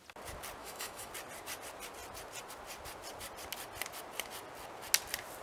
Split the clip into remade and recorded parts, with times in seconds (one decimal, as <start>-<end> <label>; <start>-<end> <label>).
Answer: 0.0-0.6 recorded; 0.6-1.1 remade; 1.1-5.4 recorded